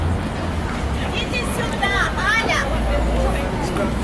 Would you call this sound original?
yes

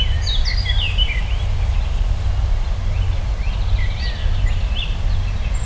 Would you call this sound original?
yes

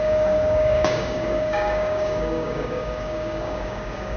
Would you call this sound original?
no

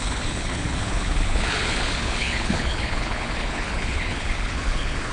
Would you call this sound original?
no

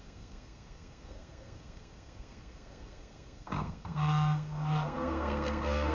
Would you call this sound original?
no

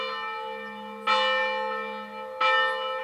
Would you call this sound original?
yes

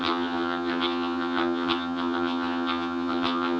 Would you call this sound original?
no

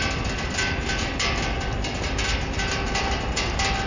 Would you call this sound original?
yes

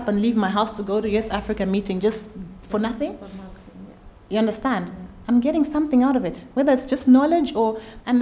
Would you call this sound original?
yes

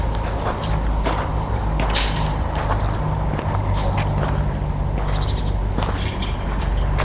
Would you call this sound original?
yes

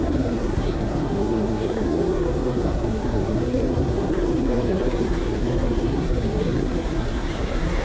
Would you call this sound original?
no